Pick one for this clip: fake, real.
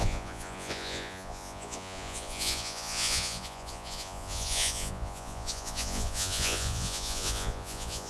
fake